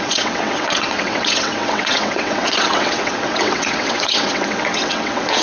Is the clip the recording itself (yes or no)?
no